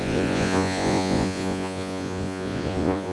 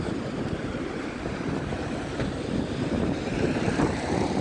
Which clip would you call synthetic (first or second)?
first